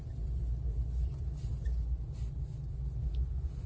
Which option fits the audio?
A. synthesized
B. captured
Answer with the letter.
B